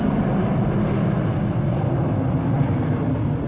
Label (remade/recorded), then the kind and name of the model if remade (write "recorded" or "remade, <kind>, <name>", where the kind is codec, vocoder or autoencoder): recorded